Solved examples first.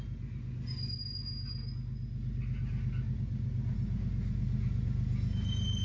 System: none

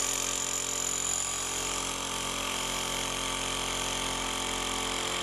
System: none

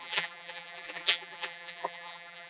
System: vocoder, BigVGAN v2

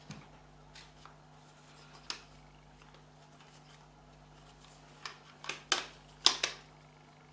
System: none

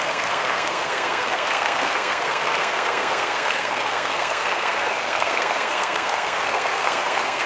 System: codec, SNAC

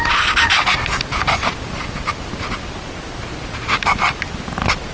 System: none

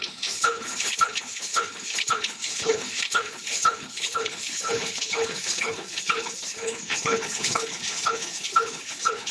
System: codec, HILCodec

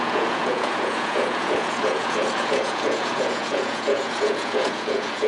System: vocoder, Vocos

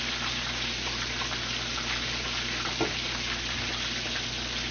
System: none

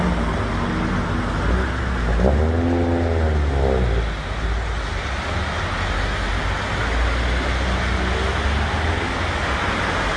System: none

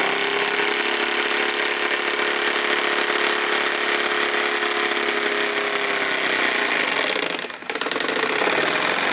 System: none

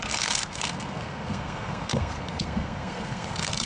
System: codec, SNAC